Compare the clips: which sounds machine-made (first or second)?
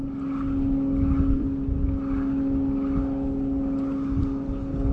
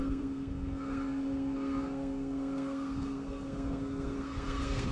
second